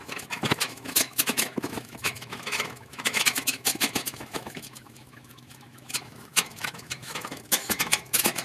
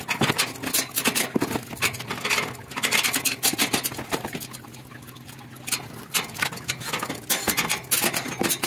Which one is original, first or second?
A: second